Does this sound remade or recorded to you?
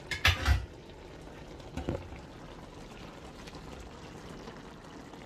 recorded